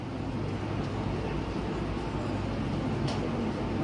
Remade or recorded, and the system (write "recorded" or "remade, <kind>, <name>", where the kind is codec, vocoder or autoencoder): recorded